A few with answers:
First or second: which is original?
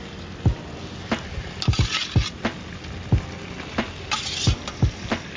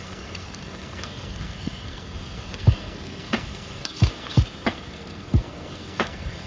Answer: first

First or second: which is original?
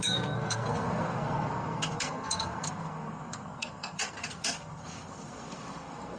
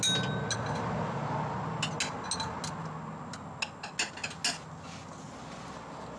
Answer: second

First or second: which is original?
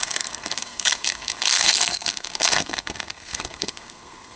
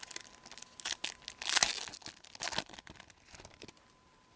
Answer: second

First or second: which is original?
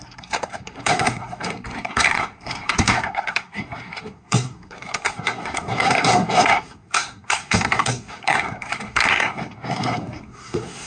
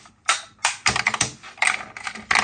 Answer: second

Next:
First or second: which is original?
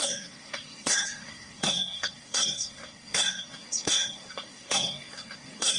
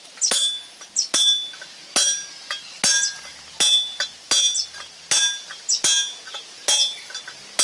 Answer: second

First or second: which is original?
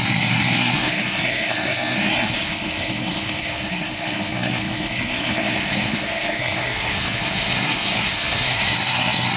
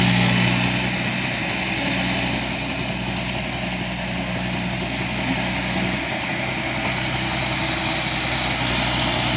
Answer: second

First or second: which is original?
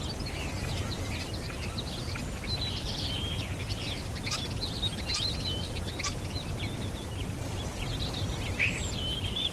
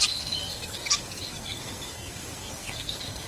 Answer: first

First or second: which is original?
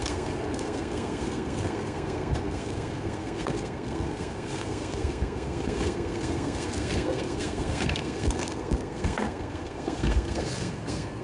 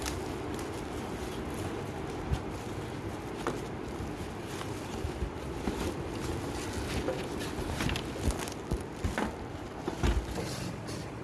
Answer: second